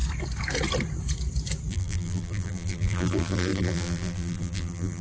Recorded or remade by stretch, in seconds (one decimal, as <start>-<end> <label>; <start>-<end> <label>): 0.0-1.7 recorded; 1.7-5.0 remade